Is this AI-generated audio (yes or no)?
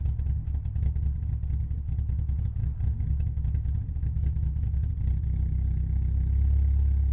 no